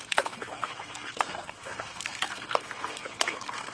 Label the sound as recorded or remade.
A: remade